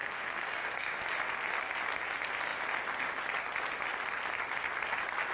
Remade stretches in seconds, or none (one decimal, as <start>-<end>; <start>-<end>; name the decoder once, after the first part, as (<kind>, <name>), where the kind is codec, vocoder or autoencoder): 0.0-1.0 (codec, SNAC)